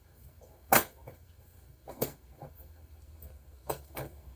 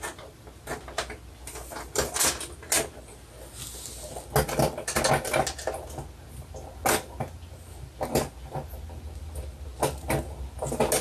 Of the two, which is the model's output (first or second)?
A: first